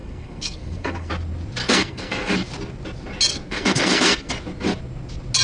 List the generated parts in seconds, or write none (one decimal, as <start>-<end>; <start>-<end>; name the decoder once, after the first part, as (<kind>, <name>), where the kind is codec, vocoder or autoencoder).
0.0-1.1 (codec, SNAC); 1.6-2.3; 3.3-4.3